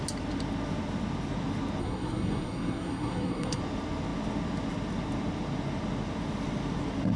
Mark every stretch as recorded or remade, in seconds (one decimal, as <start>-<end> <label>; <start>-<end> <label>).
0.0-1.8 recorded; 1.8-3.6 remade; 3.6-7.2 recorded